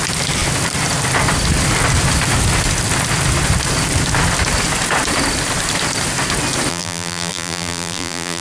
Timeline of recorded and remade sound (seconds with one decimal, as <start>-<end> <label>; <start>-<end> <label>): 0.0-6.7 recorded; 6.7-8.4 remade

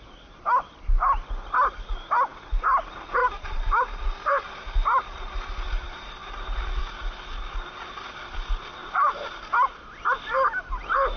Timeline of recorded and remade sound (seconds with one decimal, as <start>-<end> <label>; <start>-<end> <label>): 0.0-3.2 recorded; 3.2-4.0 remade; 4.0-8.8 recorded; 8.8-9.4 remade; 9.4-11.2 recorded

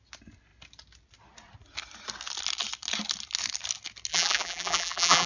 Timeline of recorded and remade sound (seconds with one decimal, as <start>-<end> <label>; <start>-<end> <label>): 0.0-4.1 recorded; 4.1-5.3 remade